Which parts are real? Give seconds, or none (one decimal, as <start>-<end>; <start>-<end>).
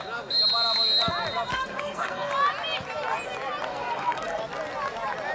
0.0-1.5; 2.3-3.7; 4.4-5.3